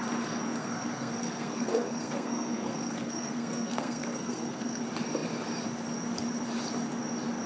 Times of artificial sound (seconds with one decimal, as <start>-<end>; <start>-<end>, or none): 0.6-4.8